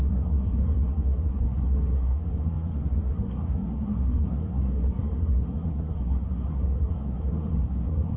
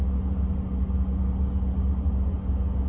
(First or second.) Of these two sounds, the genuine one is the second